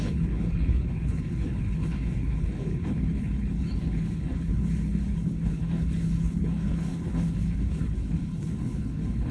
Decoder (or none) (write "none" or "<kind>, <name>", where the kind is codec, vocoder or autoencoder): codec, HILCodec